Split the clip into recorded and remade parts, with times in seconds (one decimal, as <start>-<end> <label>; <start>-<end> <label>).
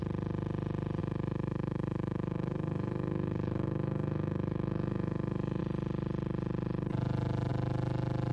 0.0-1.0 recorded; 1.0-5.6 remade; 5.6-8.3 recorded